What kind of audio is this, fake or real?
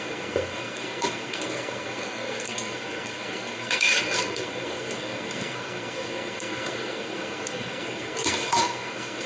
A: fake